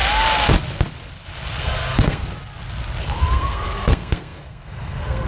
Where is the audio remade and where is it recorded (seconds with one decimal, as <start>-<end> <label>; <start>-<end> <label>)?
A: 0.0-1.6 recorded; 1.6-2.2 remade; 2.2-3.0 recorded; 3.0-5.3 remade